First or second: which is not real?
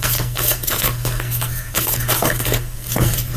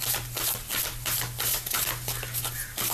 first